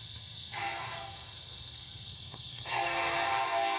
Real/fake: fake